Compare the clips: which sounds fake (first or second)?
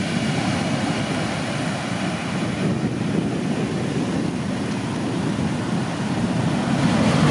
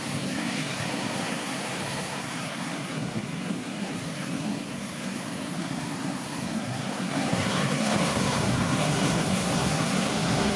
second